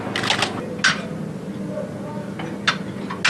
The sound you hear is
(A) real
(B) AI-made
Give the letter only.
A